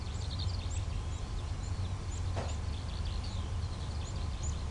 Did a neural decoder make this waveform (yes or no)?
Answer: no